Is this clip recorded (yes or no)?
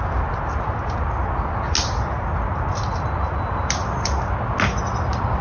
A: yes